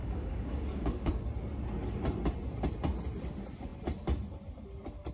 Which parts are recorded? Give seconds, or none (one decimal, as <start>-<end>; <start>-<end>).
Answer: 1.1-5.1